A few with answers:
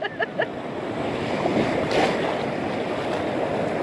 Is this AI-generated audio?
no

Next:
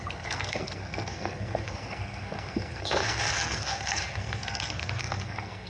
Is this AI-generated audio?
yes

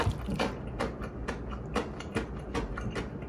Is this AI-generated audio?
no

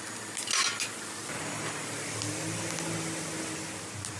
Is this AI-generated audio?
no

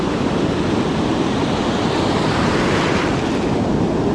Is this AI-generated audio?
no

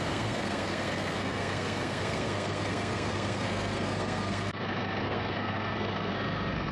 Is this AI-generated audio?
yes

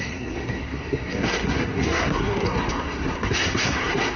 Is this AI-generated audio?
yes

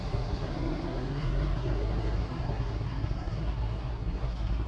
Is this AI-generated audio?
yes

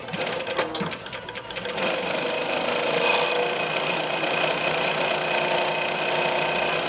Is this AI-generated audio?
no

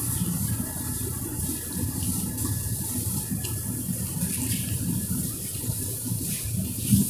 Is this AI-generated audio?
no